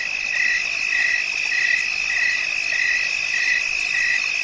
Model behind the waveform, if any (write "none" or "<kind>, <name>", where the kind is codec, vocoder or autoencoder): none